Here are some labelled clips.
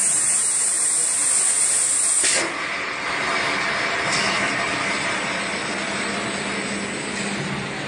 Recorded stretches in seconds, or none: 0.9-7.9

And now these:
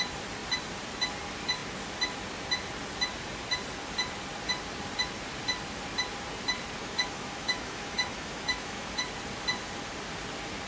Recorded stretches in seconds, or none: 0.0-6.8; 9.0-10.7

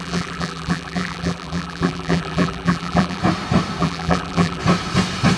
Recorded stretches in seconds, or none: 3.2-3.8; 4.6-5.4

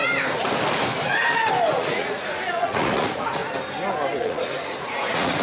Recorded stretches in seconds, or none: 0.0-1.7; 3.4-4.2

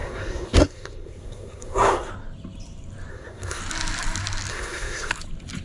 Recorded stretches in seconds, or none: 2.1-3.1; 3.6-4.5; 5.1-5.6

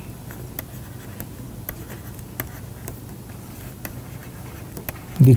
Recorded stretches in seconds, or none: 0.0-5.4